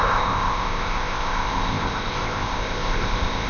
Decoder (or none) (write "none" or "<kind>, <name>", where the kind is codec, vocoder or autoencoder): codec, ZipCodec